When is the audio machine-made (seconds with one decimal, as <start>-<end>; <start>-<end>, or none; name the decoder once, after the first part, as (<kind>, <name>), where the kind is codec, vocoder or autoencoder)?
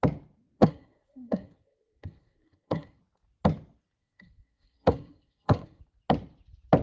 0.6-3.0 (codec, SNAC); 4.0-5.8